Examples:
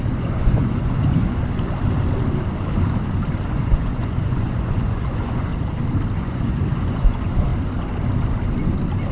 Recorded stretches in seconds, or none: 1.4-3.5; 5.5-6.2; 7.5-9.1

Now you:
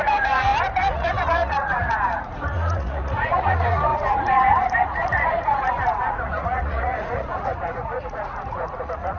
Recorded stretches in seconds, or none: none

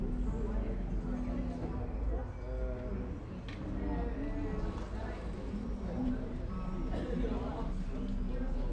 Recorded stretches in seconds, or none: 0.0-5.0; 6.9-8.7